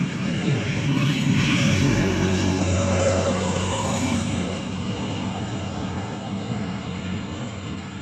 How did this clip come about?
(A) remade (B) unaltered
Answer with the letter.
A